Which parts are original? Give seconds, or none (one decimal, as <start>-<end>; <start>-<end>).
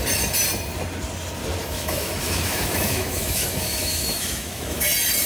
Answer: 0.0-1.6; 4.8-5.3